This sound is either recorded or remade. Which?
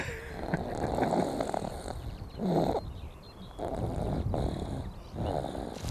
recorded